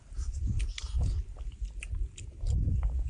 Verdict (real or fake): real